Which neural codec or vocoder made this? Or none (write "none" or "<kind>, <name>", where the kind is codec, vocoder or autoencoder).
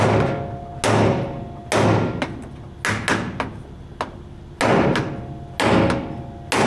none